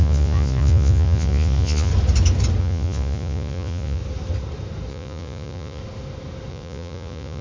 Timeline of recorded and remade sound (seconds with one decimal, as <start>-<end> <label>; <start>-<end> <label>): 0.0-1.9 remade; 1.9-2.6 recorded; 2.6-4.0 remade; 4.0-4.9 recorded; 4.9-5.8 remade; 5.8-6.5 recorded; 6.5-7.4 remade